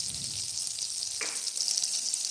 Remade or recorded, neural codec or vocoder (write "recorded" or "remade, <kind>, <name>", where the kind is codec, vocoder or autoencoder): recorded